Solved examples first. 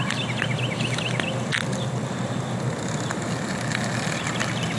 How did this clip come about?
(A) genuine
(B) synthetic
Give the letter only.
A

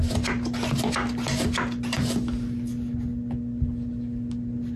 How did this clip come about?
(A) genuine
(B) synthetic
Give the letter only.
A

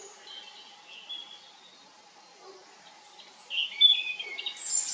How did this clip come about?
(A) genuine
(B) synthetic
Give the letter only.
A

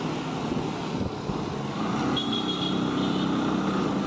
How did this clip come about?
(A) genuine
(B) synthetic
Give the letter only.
A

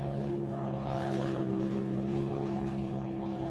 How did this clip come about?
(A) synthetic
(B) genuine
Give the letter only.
A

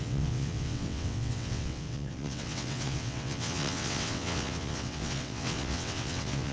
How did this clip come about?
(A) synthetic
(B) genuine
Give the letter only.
A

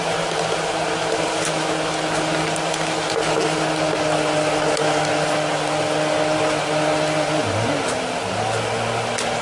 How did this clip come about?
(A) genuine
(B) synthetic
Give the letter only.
A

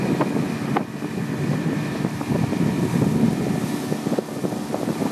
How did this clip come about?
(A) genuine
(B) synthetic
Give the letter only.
A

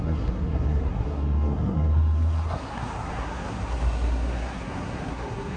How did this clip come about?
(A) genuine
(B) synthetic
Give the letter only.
B